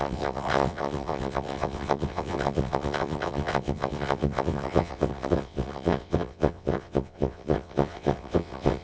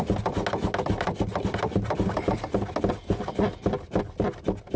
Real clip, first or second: second